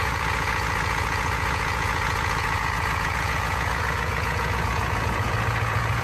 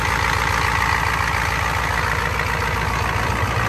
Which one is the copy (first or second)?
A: first